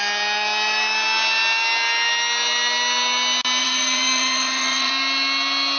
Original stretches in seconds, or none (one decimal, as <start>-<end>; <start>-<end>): 0.0-3.6; 4.9-5.8